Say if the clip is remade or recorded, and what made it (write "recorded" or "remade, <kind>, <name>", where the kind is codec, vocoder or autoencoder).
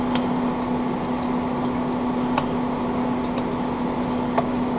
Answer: recorded